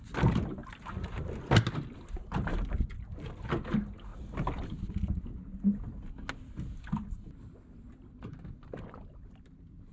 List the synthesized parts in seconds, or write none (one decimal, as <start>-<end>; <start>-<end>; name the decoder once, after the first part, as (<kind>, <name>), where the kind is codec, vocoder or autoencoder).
none